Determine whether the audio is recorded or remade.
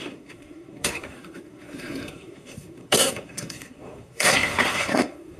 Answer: remade